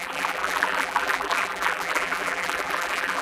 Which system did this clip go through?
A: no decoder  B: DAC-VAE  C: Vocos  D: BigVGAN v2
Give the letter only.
D